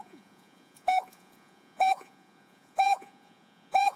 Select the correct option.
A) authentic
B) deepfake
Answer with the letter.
B